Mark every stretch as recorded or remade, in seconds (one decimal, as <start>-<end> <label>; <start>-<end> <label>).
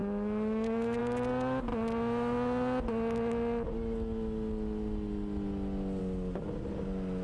0.0-1.0 remade; 1.0-7.2 recorded